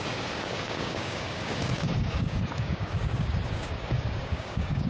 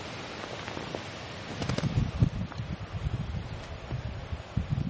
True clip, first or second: second